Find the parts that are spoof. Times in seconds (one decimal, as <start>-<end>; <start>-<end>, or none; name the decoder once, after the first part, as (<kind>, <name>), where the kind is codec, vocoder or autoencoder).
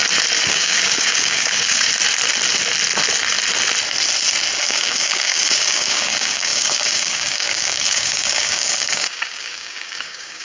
0.5-1.9 (codec, DAC); 4.6-10.4